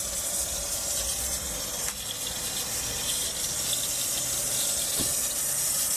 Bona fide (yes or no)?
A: yes